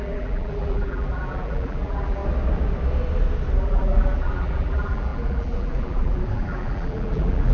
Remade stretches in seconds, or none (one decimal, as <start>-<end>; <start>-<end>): 0.0-2.2; 3.6-7.5